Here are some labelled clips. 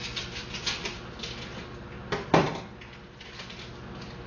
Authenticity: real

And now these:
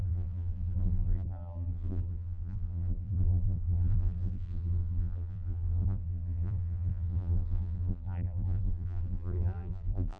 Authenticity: fake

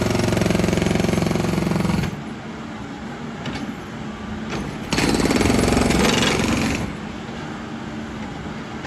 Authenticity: real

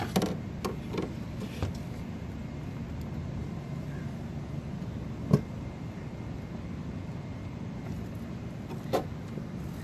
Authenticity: real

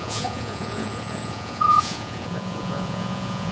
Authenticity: fake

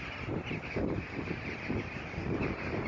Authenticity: fake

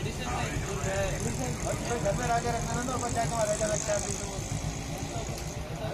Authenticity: real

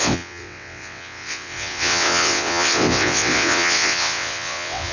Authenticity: fake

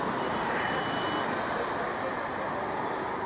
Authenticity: real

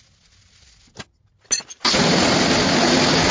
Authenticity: real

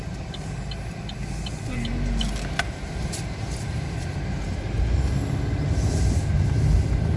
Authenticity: real